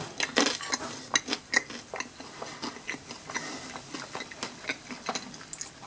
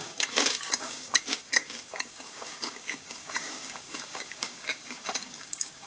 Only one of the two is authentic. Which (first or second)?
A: first